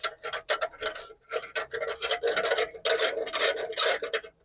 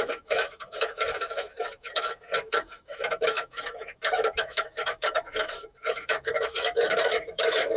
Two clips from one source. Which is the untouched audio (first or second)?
first